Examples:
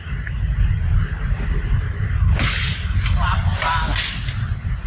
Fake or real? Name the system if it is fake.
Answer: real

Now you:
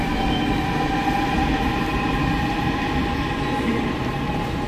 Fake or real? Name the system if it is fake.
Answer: real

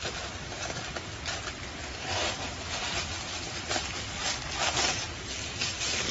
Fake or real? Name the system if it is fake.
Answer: real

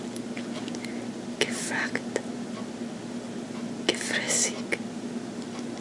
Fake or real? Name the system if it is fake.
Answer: real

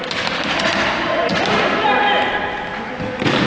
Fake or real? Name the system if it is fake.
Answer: real